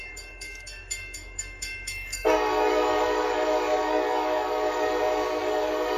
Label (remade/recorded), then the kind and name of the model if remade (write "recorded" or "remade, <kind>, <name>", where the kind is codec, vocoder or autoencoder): remade, codec, DAC